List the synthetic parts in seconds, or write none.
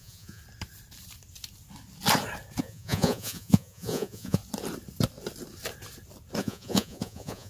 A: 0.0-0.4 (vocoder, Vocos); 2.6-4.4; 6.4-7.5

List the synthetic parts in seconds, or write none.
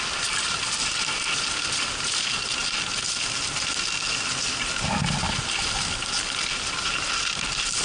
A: none